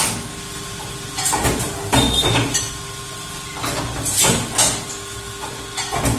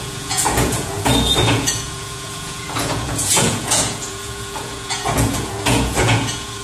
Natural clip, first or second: first